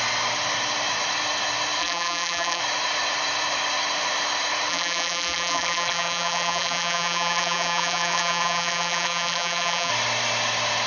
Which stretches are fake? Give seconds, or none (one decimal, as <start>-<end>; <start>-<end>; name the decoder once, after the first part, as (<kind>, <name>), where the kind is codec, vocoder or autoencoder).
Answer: 1.8-2.6 (vocoder, BigVGAN v2); 4.7-9.9